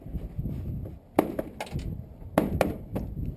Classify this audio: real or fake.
real